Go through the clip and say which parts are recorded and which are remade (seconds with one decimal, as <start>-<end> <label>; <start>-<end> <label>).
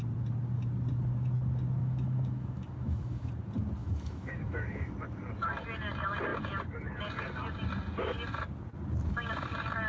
0.0-1.8 recorded; 1.8-3.3 remade; 3.3-3.8 recorded; 3.8-4.9 remade; 4.9-9.9 recorded